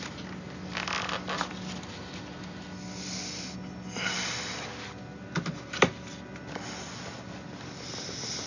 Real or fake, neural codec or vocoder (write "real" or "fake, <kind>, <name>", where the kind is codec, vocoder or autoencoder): real